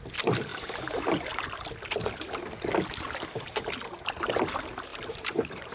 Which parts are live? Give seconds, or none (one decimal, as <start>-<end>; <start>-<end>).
0.0-4.9

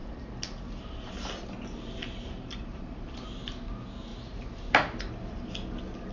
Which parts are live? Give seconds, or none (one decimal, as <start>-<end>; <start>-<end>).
1.1-2.0; 3.0-4.1; 5.1-6.1

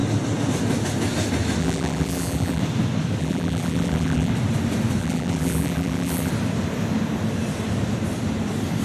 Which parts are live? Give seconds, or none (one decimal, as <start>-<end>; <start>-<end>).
0.0-1.6; 2.6-3.2; 4.3-5.0; 6.3-8.8

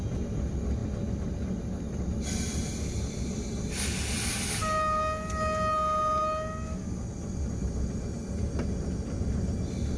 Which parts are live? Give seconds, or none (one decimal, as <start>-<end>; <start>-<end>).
0.0-10.0

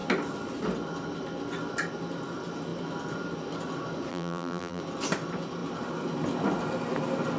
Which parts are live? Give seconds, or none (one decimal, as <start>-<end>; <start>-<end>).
0.0-4.1; 4.8-7.4

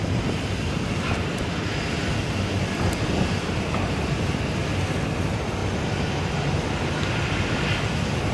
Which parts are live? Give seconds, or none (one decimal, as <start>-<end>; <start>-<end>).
5.6-6.8

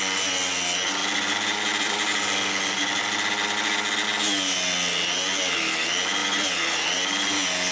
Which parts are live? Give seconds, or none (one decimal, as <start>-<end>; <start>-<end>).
0.0-1.0; 3.0-6.2

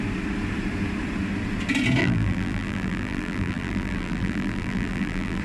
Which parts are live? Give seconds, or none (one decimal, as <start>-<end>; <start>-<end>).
0.0-2.0